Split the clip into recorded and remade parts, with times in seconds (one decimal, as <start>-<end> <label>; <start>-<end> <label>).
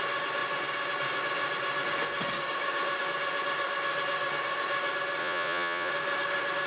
0.0-5.2 recorded; 5.2-5.9 remade; 5.9-6.7 recorded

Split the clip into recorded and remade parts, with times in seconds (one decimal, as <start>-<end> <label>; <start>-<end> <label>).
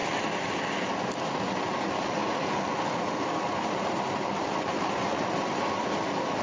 0.0-6.4 recorded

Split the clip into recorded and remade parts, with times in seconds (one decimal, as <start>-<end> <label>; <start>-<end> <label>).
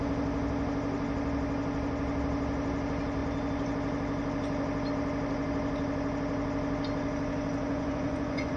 0.0-7.7 recorded; 7.7-8.6 remade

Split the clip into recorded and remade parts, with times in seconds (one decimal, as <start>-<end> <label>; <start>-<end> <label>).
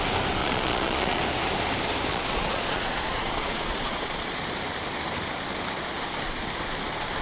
0.0-0.4 recorded; 0.4-1.2 remade; 1.2-2.1 recorded; 2.1-4.4 remade; 4.4-7.2 recorded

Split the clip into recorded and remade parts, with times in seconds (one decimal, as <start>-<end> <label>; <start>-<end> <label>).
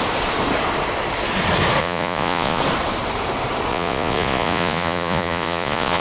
0.0-1.8 recorded; 1.8-2.6 remade; 2.6-3.7 recorded; 3.7-6.0 remade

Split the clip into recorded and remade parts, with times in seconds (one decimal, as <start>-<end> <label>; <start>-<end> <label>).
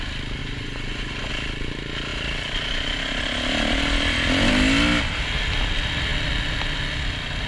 0.0-0.4 recorded; 0.4-1.3 remade; 1.3-7.5 recorded